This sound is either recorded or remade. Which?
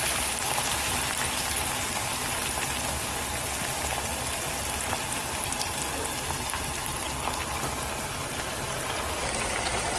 recorded